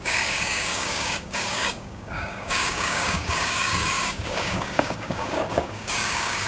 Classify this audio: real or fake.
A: fake